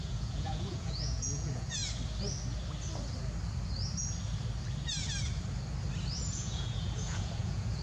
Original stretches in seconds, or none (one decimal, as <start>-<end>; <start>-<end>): 1.8-6.2